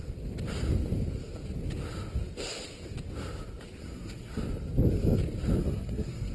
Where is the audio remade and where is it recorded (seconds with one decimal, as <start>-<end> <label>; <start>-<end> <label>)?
0.0-3.8 recorded; 3.8-4.4 remade; 4.4-5.6 recorded; 5.6-6.3 remade